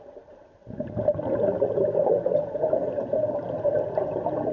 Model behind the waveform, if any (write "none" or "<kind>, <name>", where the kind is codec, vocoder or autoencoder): none